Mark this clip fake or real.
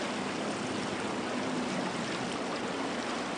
real